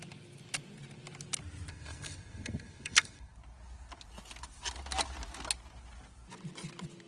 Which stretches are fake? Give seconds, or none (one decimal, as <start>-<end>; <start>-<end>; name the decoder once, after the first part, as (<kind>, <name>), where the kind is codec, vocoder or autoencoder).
1.7-3.3 (codec, SNAC)